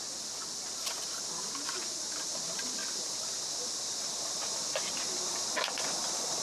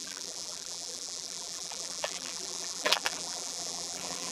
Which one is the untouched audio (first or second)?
first